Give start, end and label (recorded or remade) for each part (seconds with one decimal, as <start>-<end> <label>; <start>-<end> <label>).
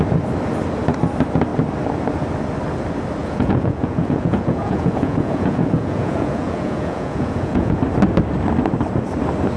0.0-3.2 recorded; 3.2-7.8 remade; 7.8-9.6 recorded